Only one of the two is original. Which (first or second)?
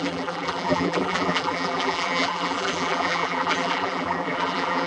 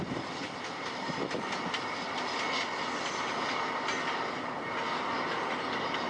second